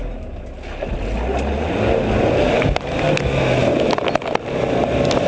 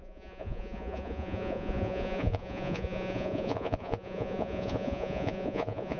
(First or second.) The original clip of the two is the first